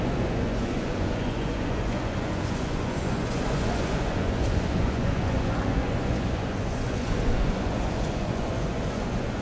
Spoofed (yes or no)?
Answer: yes